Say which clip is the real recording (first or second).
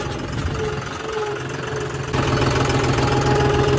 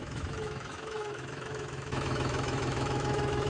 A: first